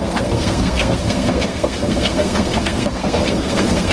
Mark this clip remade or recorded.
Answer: remade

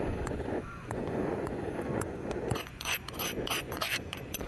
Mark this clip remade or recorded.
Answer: remade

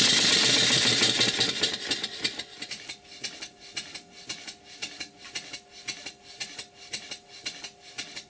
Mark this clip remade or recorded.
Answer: recorded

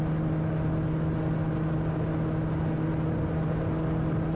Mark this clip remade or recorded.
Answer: recorded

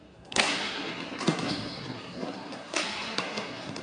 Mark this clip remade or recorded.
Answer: remade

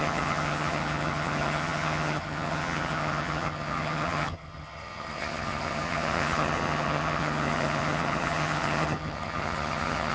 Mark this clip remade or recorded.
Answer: remade